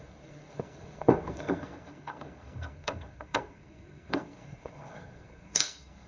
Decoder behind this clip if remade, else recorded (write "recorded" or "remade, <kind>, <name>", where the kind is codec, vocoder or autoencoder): remade, codec, SNAC